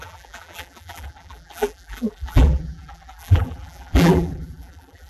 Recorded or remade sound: remade